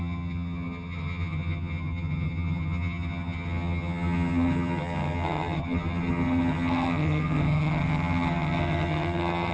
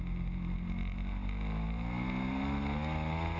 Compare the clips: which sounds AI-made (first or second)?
first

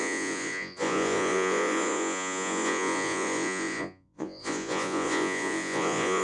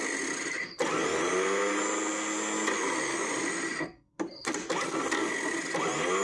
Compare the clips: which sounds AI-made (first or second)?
first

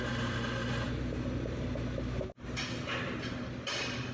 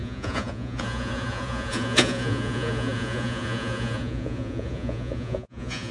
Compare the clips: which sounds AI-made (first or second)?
second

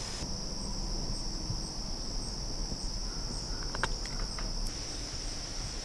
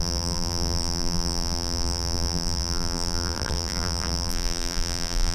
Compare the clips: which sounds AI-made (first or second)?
second